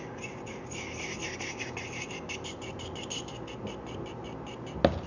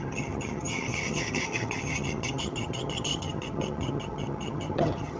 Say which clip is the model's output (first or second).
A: second